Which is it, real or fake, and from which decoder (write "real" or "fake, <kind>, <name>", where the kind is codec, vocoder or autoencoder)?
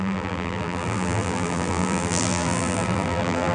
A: fake, vocoder, BigVGAN v2